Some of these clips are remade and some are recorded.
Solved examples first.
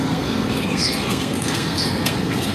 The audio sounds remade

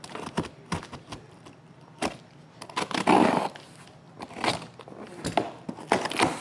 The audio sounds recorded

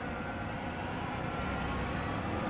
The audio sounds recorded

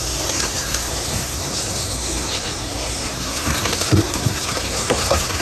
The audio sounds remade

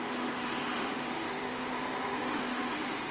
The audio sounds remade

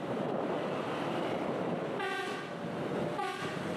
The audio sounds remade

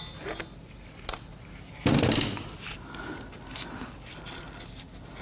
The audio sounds recorded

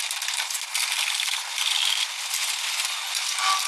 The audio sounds recorded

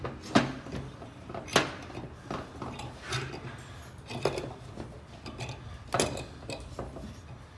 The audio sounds recorded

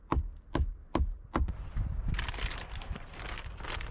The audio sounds recorded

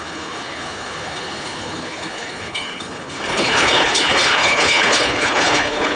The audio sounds remade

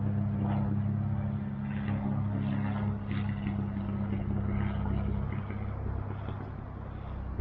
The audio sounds recorded